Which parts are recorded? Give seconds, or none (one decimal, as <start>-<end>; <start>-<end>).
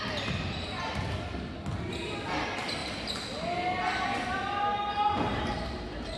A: 0.0-6.2